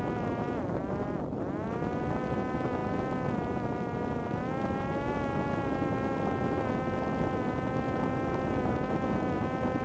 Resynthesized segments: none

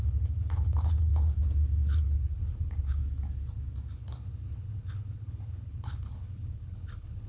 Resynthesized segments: 0.0-1.1 (codec, HILCodec); 2.0-3.0; 3.9-7.3